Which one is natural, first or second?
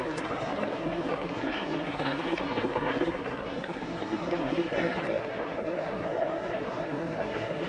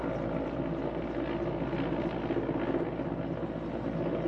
second